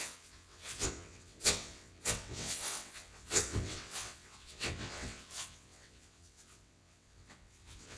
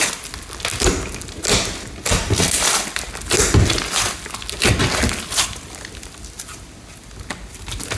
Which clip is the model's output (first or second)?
first